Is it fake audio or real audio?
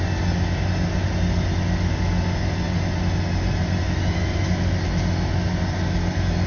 real